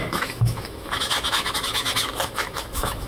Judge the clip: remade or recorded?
remade